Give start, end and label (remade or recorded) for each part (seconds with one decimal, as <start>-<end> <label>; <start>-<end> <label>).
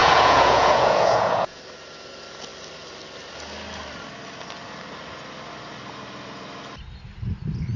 0.0-1.6 remade; 1.6-7.8 recorded